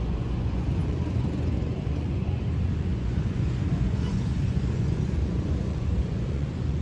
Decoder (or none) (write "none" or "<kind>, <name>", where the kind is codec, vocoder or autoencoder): vocoder, Vocos